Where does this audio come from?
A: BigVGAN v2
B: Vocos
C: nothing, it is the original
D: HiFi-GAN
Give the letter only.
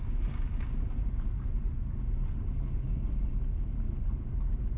C